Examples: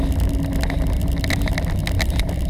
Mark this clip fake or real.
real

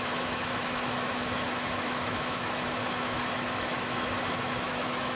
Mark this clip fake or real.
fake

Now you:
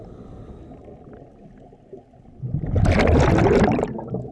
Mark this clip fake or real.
real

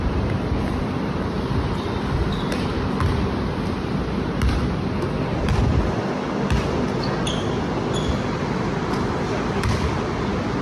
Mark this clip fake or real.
real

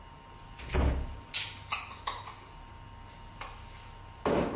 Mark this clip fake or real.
real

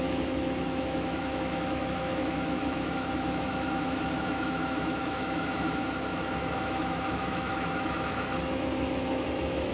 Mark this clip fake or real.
fake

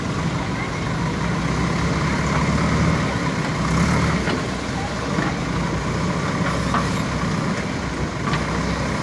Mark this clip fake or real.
real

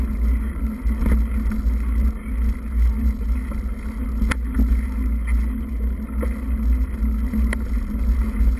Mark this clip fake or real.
real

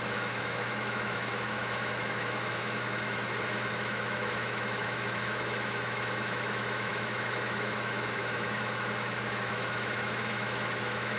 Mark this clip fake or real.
fake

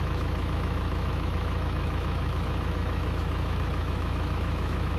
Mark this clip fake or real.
fake